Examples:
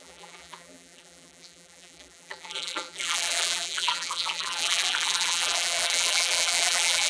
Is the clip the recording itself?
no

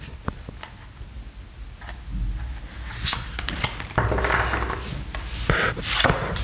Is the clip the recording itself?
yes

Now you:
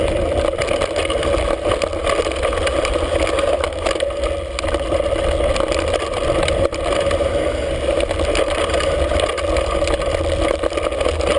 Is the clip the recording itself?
yes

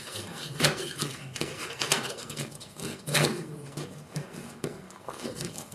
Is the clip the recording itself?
no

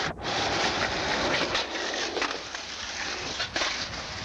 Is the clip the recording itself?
yes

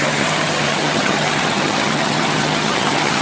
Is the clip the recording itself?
no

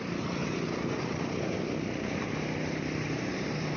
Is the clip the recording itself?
yes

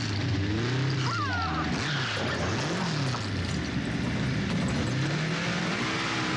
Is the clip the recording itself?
yes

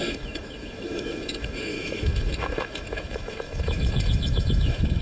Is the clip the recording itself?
no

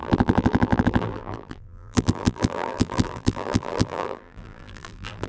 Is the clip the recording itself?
no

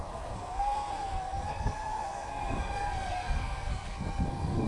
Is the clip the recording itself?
no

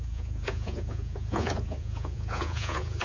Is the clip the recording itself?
no